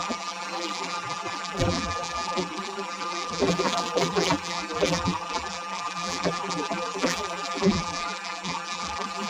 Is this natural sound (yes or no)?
no